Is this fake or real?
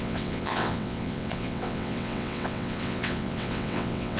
fake